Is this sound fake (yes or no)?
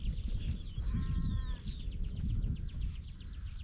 no